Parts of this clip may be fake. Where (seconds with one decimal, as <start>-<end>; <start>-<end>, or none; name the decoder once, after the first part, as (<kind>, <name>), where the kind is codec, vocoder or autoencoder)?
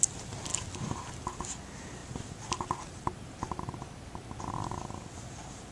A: none